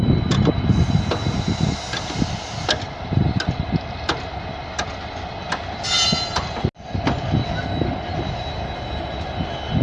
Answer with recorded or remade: recorded